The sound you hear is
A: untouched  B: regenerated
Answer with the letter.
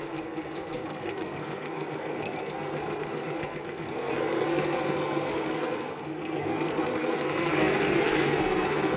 B